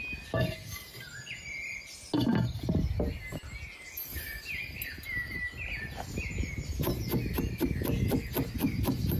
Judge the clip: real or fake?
real